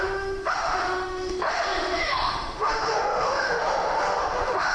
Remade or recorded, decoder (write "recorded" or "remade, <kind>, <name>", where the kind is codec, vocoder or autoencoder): remade, autoencoder, DAC-VAE